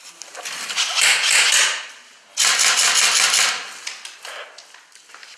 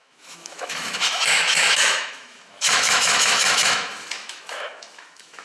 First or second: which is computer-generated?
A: second